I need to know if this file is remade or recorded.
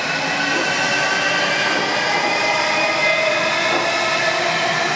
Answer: recorded